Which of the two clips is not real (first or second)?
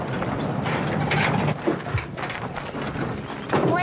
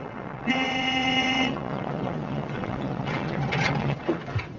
second